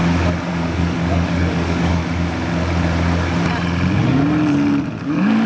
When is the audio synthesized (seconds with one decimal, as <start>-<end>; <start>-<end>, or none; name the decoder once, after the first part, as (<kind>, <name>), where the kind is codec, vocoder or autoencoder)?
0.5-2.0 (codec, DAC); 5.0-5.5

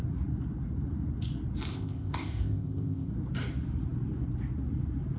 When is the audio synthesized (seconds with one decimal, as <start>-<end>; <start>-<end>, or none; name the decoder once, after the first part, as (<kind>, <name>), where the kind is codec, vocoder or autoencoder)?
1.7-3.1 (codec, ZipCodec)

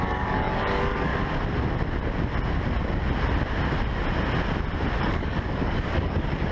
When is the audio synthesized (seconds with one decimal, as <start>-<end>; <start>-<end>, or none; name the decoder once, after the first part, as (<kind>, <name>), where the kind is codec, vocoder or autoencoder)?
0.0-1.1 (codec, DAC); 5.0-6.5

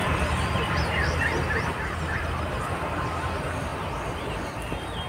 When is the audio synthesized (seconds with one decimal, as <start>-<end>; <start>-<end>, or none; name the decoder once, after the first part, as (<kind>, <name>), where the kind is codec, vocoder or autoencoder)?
3.7-4.3 (vocoder, BigVGAN v2)

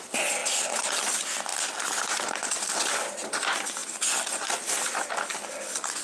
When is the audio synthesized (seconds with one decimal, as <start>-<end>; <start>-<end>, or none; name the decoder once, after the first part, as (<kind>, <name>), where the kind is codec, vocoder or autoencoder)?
none

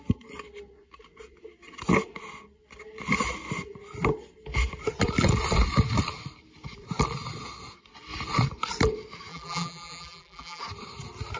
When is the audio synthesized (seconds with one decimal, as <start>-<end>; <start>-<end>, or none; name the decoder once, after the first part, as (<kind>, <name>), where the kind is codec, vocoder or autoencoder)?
9.3-10.6 (vocoder, BigVGAN v2)